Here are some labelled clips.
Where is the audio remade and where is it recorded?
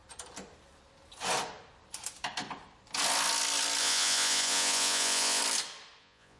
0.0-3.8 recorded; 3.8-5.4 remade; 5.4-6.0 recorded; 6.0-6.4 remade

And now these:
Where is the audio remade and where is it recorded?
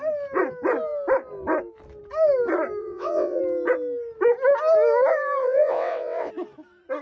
0.0-2.8 recorded; 2.8-3.4 remade; 3.4-5.4 recorded; 5.4-6.3 remade; 6.3-7.0 recorded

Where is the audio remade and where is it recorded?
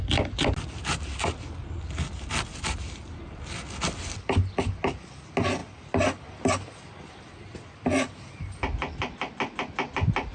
0.0-10.3 recorded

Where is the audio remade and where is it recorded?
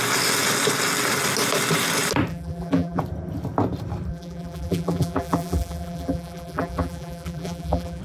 0.0-2.3 recorded; 2.3-3.0 remade; 3.0-4.1 recorded; 4.1-8.0 remade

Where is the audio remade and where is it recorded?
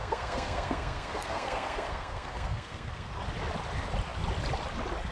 0.0-3.1 remade; 3.1-5.1 recorded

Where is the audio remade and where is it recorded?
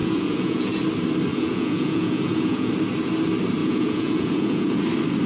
0.0-0.8 remade; 0.8-1.3 recorded; 1.3-2.7 remade; 2.7-3.6 recorded; 3.6-4.8 remade; 4.8-5.3 recorded